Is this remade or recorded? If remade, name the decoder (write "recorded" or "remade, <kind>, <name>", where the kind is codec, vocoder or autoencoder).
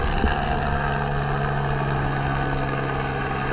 recorded